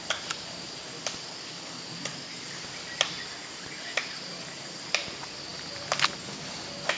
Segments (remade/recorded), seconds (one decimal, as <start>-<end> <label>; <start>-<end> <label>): 0.0-7.0 recorded